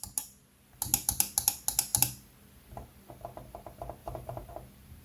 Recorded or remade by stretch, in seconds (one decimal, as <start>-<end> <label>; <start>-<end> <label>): 0.0-4.0 recorded; 4.0-4.5 remade; 4.5-5.0 recorded